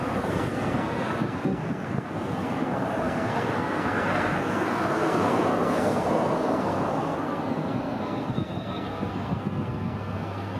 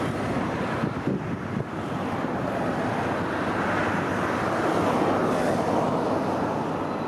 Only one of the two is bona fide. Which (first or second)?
second